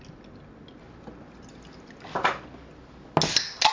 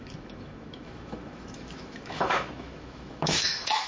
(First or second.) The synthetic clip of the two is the second